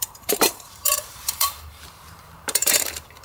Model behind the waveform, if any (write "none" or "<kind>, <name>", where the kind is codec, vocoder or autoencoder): vocoder, BigVGAN v2